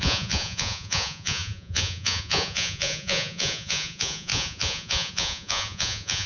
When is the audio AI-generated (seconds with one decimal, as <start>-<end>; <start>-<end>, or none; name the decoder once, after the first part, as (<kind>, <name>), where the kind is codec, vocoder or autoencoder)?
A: 0.0-6.3 (vocoder, Vocos)